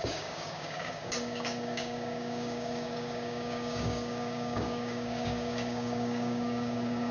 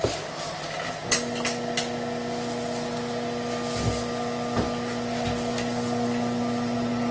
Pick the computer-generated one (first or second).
first